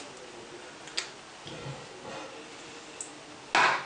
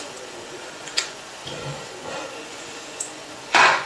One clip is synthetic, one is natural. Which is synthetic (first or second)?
second